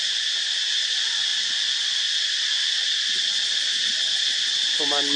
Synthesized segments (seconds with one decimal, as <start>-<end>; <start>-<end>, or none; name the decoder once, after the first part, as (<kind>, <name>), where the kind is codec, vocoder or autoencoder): none